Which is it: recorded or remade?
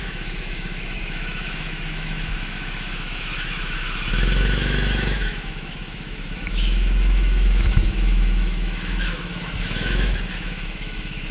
remade